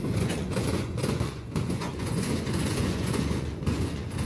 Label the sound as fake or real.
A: fake